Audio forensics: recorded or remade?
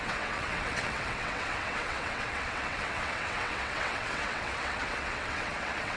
remade